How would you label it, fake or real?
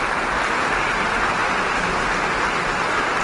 real